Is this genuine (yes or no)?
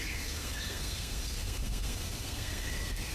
no